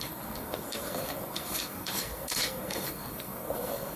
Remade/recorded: remade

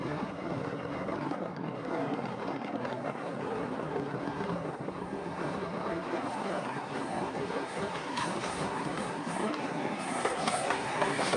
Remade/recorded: remade